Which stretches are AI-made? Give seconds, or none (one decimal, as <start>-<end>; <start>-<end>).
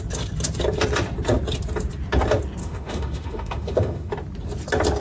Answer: 2.6-4.1